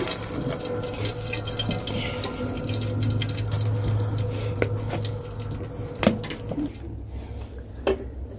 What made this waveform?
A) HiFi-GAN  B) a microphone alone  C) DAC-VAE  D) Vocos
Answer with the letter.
B